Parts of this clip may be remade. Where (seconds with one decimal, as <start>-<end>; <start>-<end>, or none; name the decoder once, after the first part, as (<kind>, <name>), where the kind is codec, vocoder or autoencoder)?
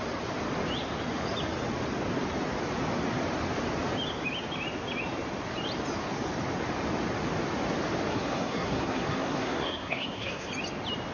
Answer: 8.1-10.5 (codec, SNAC)